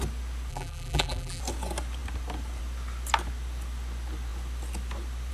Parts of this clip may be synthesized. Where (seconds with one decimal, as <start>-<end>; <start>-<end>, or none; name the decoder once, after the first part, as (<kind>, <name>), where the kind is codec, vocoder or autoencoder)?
0.5-1.4 (vocoder, BigVGAN v2)